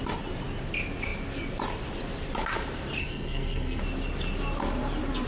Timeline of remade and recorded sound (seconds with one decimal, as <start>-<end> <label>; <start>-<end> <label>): 0.0-3.0 recorded; 3.0-3.8 remade; 3.8-5.3 recorded